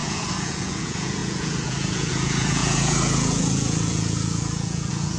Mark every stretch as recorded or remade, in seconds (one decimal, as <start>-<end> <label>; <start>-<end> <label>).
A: 0.0-5.2 remade